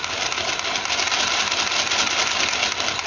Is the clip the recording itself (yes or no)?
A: yes